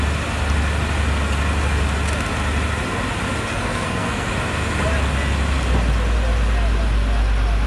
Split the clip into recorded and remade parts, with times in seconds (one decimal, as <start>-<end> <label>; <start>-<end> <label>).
0.0-3.5 recorded; 3.5-4.3 remade; 4.3-7.7 recorded